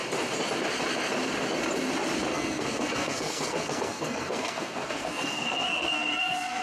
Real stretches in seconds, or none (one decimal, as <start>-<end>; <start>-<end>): 0.0-2.3

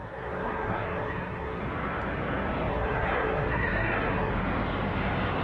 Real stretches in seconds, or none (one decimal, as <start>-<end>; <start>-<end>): 1.6-2.7; 4.3-5.4

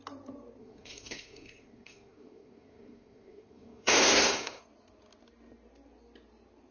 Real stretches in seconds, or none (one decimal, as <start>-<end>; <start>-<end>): 0.0-0.6; 4.6-6.7

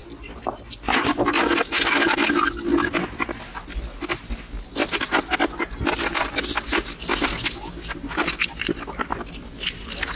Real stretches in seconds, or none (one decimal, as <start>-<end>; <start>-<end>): 0.0-10.2

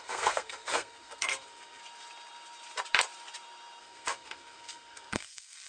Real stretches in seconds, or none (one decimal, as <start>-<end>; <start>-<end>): 1.8-3.8

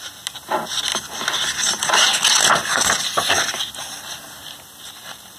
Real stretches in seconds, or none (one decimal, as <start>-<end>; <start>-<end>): 0.0-5.4

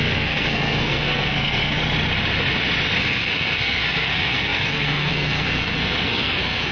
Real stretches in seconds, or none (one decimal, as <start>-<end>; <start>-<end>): 1.8-3.0